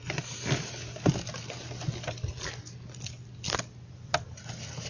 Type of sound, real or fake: real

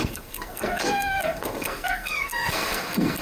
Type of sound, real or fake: fake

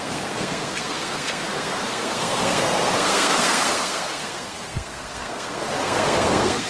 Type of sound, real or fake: fake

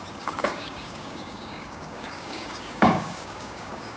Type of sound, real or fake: fake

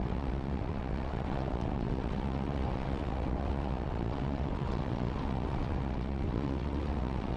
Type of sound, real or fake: fake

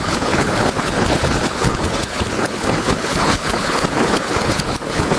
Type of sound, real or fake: fake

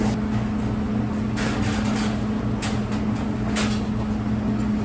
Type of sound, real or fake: real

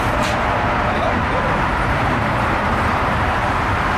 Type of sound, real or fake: fake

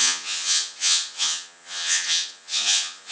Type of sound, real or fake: fake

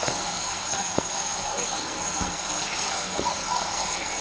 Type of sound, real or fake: fake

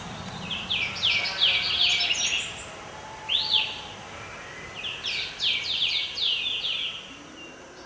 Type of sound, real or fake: real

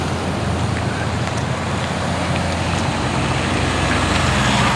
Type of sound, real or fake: real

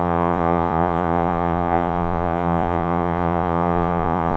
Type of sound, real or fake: fake